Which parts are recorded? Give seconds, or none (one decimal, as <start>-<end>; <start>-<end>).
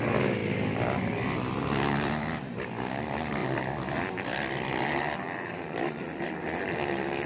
0.4-2.8